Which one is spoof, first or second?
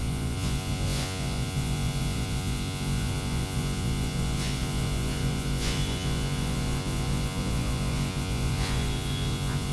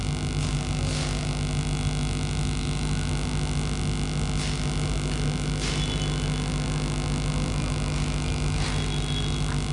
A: first